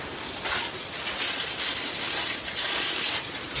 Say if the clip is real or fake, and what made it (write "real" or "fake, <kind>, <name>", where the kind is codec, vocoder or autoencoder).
real